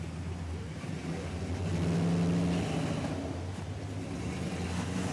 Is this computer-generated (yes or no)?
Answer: no